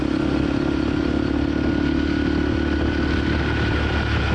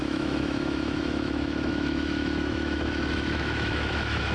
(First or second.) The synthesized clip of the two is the second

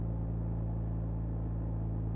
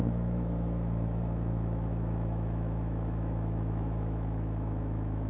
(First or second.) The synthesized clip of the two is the second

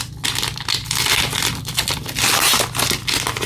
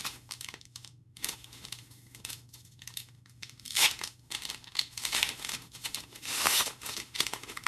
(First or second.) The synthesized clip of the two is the second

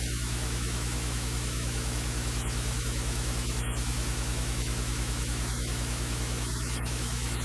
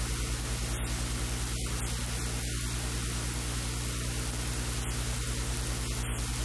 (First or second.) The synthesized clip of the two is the first